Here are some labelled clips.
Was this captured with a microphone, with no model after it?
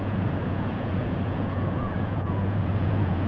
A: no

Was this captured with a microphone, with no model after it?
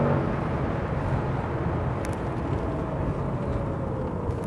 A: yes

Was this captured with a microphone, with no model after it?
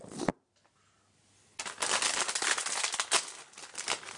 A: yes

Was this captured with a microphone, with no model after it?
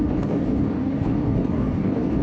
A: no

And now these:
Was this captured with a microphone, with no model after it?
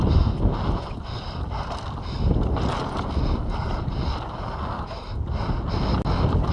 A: yes